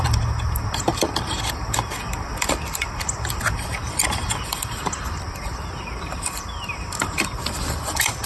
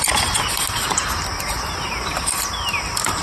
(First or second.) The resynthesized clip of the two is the first